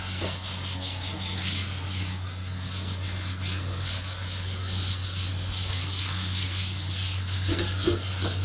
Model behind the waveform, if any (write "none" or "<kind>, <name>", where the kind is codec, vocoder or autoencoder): codec, SNAC